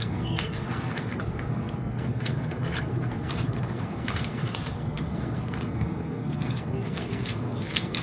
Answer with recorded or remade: remade